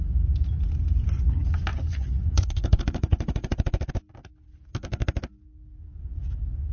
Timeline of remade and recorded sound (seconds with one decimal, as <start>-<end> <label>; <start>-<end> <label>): 0.0-1.9 recorded; 1.9-3.9 remade; 3.9-6.7 recorded